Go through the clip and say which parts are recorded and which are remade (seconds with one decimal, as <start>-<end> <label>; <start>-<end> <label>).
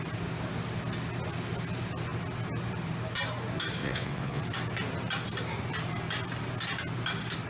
0.0-3.8 recorded; 3.8-4.4 remade; 4.4-7.5 recorded